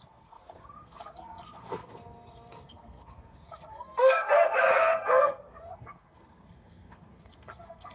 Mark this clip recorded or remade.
remade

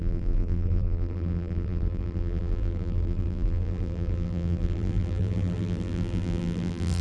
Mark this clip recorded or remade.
remade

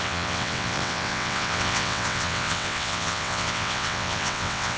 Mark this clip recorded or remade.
remade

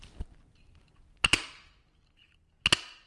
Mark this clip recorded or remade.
recorded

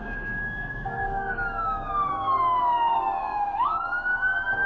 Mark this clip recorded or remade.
remade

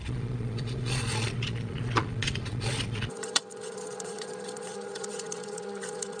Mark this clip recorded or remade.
remade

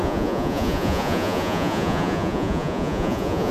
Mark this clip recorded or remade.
remade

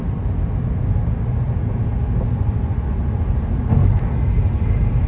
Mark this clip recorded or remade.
recorded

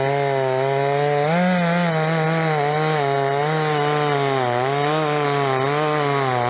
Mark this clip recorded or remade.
recorded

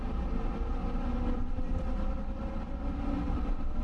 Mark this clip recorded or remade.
recorded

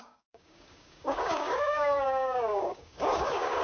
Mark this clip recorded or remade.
remade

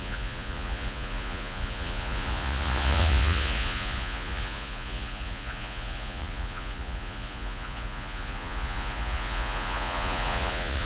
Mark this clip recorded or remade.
remade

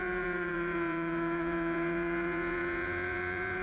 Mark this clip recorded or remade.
remade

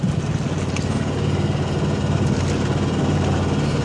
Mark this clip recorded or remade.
recorded